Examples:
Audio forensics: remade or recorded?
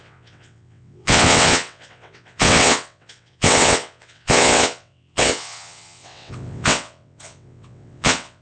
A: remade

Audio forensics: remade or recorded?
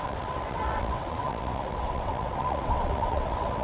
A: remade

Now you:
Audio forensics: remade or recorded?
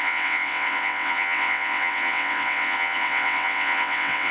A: remade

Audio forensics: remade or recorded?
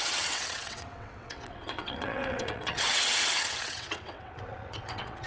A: remade